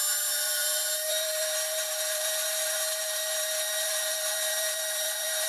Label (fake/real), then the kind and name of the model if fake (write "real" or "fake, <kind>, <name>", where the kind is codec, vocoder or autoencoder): fake, vocoder, BigVGAN v2